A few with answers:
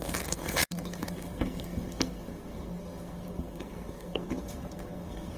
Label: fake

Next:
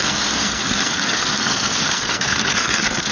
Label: fake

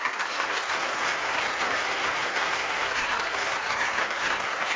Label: fake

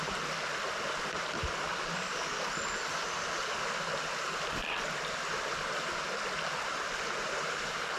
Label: real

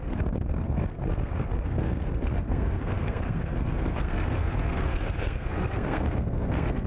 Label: fake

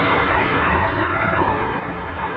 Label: fake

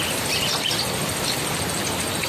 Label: real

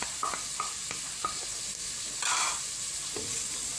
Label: real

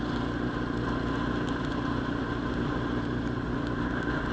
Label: real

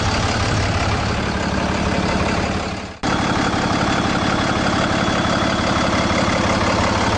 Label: real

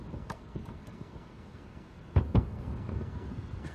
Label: fake